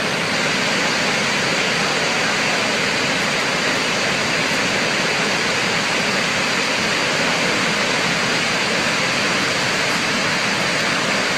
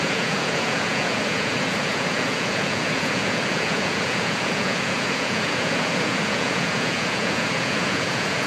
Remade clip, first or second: second